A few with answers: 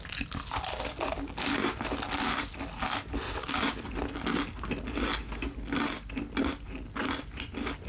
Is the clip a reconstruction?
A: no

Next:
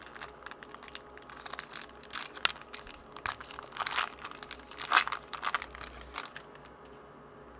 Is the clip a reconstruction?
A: no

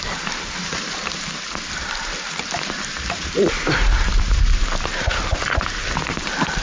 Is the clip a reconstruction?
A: yes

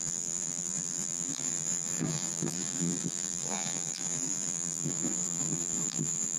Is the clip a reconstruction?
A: yes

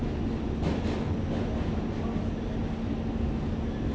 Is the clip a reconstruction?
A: no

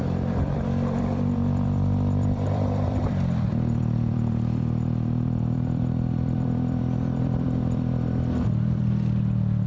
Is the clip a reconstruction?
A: yes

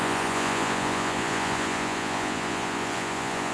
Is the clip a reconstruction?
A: yes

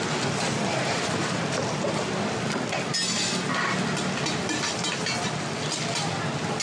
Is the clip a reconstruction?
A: no